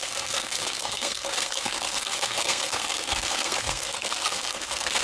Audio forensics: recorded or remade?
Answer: remade